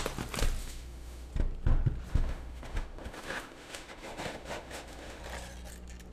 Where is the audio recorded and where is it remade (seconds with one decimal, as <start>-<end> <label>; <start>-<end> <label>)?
0.0-0.6 recorded; 0.6-1.3 remade; 1.3-2.1 recorded; 2.1-5.2 remade; 5.2-6.1 recorded